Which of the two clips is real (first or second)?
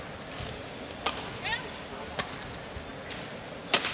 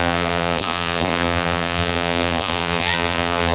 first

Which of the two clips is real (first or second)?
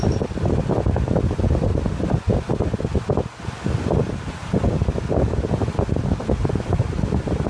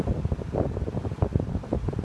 first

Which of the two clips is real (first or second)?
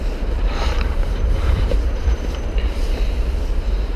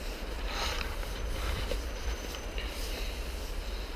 second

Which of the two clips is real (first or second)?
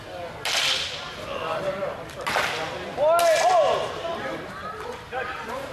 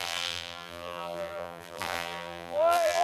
first